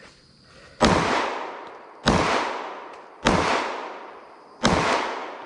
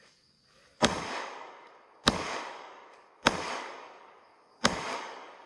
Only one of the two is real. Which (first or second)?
first